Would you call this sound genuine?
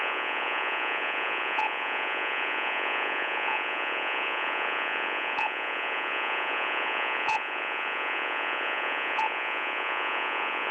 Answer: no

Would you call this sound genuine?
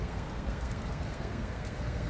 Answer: no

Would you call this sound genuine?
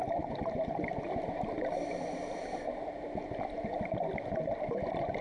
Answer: yes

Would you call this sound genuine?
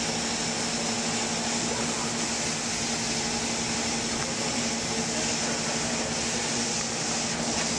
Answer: yes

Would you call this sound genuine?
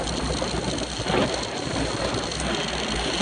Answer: yes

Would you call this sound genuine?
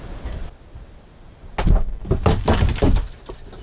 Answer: yes